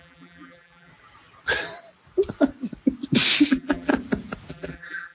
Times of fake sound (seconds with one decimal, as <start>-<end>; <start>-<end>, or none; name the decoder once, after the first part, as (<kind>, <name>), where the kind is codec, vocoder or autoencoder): 0.0-0.9 (vocoder, BigVGAN v2); 3.5-3.9; 4.5-5.1